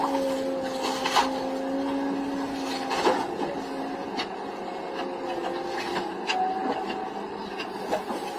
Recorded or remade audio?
recorded